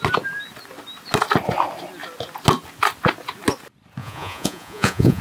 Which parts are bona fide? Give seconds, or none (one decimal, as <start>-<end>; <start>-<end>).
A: 0.0-4.0